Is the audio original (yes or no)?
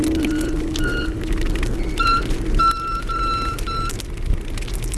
yes